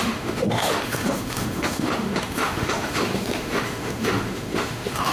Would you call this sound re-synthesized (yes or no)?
yes